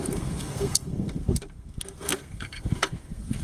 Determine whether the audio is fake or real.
fake